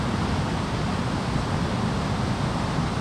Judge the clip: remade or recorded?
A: remade